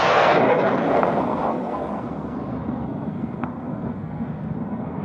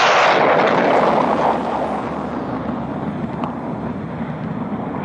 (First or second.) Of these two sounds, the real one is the second